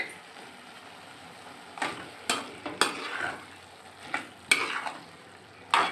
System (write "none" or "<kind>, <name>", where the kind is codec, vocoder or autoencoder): none